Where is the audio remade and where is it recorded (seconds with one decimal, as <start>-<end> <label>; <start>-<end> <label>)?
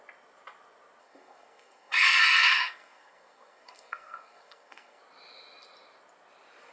0.0-1.0 recorded; 1.0-5.0 remade; 5.0-6.7 recorded